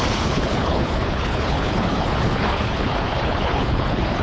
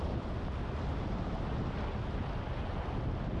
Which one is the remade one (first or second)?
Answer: first